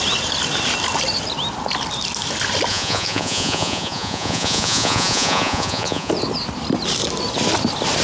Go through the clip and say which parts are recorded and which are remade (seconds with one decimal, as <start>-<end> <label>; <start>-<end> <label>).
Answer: 0.0-2.7 recorded; 2.7-6.1 remade; 6.1-8.0 recorded